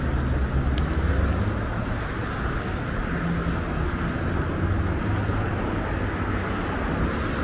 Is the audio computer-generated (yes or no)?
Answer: no